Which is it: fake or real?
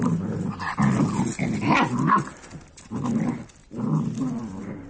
real